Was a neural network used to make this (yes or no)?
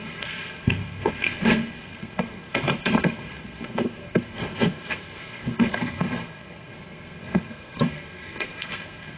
yes